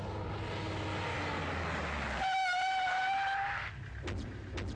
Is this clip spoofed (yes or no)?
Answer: no